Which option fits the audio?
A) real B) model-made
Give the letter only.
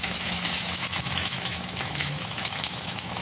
B